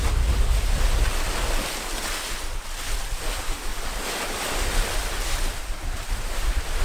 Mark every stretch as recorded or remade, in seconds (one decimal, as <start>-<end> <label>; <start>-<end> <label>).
0.0-6.8 recorded